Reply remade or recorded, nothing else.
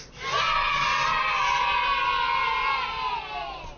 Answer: recorded